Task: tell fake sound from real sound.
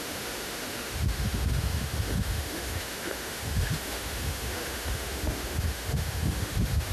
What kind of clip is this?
fake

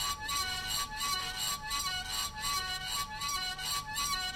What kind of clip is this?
real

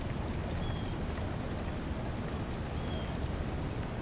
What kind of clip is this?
real